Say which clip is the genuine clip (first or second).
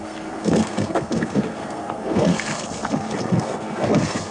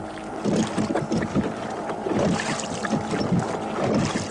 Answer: second